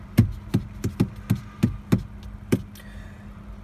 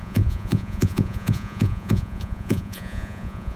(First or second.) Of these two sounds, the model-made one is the second